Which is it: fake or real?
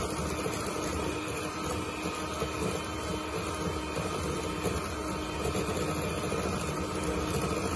real